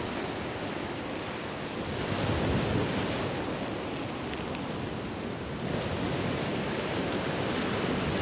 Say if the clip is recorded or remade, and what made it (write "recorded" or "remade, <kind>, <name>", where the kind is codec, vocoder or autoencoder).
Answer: recorded